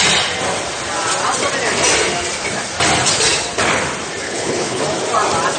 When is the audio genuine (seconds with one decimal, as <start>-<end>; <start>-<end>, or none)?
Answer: 0.0-4.2; 4.8-5.6